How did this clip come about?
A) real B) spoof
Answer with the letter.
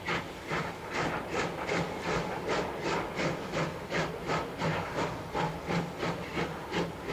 A